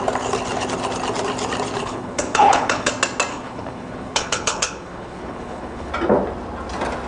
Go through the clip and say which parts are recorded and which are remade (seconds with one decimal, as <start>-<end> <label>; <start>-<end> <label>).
0.0-1.8 recorded; 1.8-2.9 remade; 2.9-3.3 recorded; 3.3-5.9 remade; 5.9-7.1 recorded